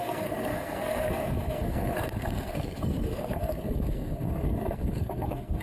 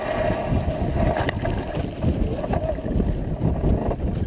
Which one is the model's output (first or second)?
first